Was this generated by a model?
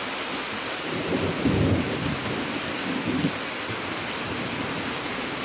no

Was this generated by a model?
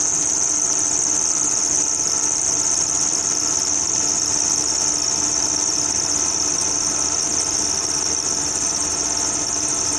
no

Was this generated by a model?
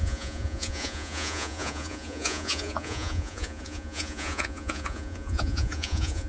yes